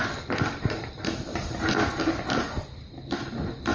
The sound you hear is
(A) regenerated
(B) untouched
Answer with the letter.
B